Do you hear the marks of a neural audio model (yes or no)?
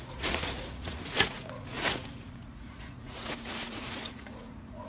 yes